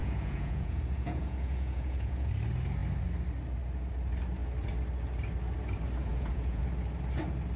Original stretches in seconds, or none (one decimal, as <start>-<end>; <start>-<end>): 2.3-6.1; 6.6-7.6